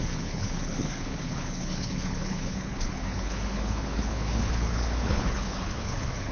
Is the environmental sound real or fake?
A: fake